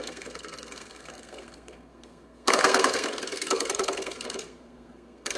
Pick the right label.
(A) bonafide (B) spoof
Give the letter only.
B